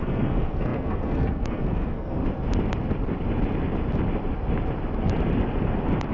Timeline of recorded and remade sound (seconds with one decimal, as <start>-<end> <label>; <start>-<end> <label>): 0.0-2.2 remade; 2.2-6.1 recorded